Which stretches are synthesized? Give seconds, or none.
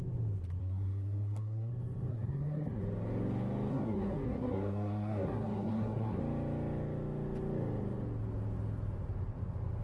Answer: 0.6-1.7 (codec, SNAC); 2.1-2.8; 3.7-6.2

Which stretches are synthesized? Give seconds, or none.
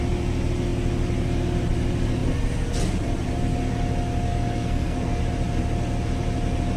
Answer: 4.3-5.2 (codec, SNAC)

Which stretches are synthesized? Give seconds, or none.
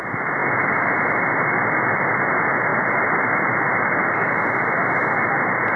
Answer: none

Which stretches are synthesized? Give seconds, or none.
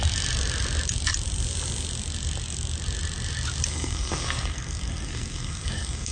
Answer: 3.7-6.1 (codec, SNAC)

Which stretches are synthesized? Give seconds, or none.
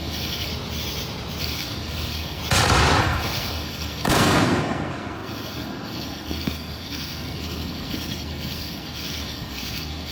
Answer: 0.0-0.5 (codec, SNAC); 1.4-2.4; 3.0-10.1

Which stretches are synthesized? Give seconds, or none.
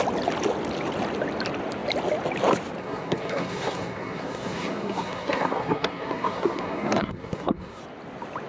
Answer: 2.8-7.8 (codec, SNAC)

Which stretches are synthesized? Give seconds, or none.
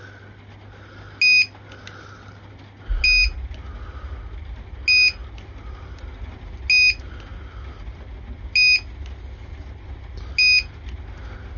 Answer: none